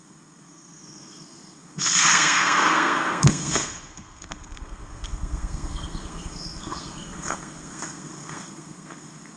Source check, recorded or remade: remade